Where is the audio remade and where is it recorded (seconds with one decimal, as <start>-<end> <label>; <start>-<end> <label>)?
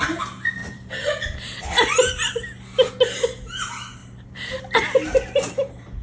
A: 0.0-0.6 recorded; 0.6-2.1 remade; 2.1-4.0 recorded; 4.0-4.6 remade; 4.6-6.0 recorded